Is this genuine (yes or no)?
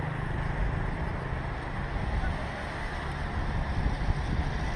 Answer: yes